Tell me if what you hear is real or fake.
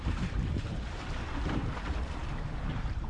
fake